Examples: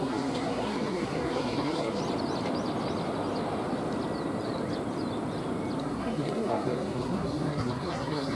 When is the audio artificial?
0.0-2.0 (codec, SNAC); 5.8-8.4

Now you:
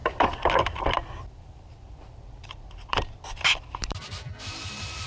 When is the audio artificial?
0.0-5.1 (vocoder, BigVGAN v2)

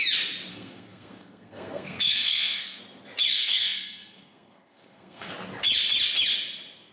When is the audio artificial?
0.5-2.8 (codec, SNAC); 3.3-5.3

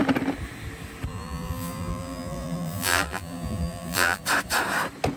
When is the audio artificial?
1.1-4.2 (vocoder, BigVGAN v2)